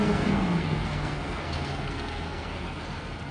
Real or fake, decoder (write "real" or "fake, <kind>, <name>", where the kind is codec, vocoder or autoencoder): fake, codec, SNAC